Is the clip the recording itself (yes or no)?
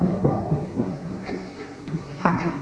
no